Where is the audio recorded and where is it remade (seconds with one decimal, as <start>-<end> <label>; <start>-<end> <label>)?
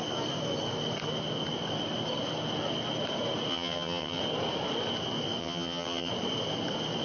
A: 0.0-3.5 recorded; 3.5-4.2 remade; 4.2-5.4 recorded; 5.4-6.1 remade; 6.1-7.0 recorded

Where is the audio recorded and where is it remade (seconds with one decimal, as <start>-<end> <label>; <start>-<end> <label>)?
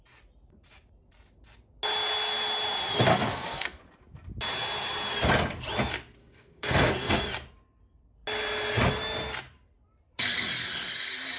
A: 0.0-3.1 recorded; 3.1-3.8 remade; 3.8-6.2 recorded; 6.2-7.3 remade; 7.3-11.4 recorded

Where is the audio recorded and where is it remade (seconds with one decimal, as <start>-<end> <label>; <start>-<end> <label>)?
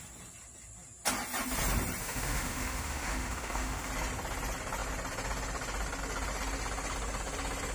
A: 0.0-2.0 recorded; 2.0-3.9 remade; 3.9-7.7 recorded